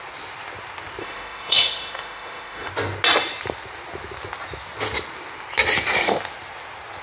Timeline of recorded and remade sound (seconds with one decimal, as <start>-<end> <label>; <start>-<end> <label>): 0.0-1.0 recorded; 1.0-2.7 remade; 2.7-7.0 recorded